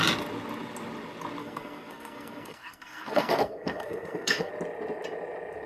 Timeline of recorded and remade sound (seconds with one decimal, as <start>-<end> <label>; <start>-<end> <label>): 0.0-1.4 recorded; 1.4-4.5 remade; 4.5-5.7 recorded